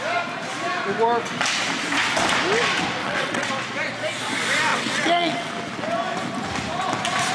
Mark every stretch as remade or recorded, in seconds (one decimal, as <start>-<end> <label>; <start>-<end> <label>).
0.0-3.0 recorded; 3.0-3.5 remade; 3.5-4.7 recorded; 4.7-5.5 remade; 5.5-7.3 recorded